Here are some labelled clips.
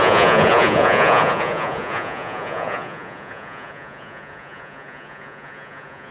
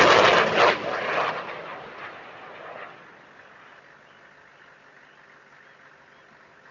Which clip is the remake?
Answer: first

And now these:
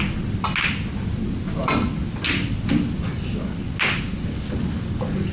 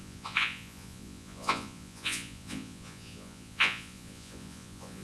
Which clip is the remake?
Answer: second